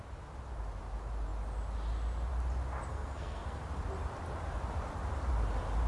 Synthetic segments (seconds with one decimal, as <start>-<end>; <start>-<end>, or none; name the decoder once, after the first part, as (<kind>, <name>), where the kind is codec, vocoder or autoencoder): 2.9-3.6 (codec, SNAC)